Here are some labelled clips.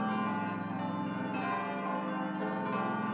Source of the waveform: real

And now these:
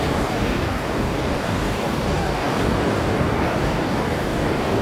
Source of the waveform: fake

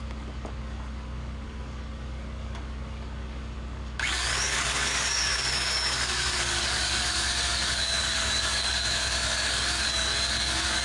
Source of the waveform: fake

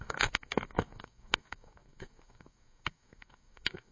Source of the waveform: fake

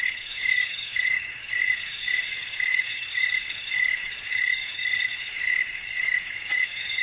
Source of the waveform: fake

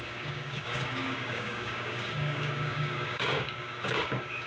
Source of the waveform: fake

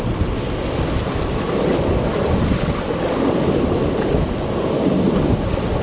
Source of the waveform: real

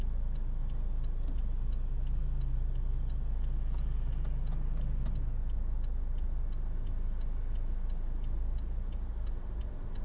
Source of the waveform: real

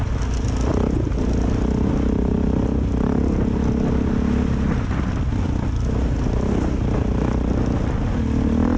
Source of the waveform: real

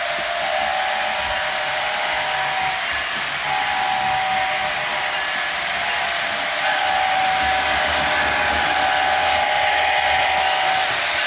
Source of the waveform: real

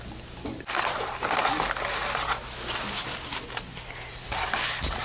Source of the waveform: real